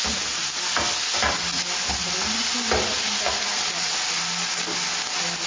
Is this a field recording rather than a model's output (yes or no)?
yes